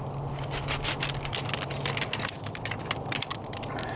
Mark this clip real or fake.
real